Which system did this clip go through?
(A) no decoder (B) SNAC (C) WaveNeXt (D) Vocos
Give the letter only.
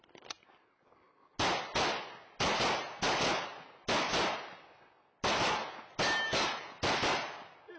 A